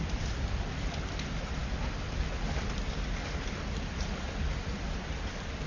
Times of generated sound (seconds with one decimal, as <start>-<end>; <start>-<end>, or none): none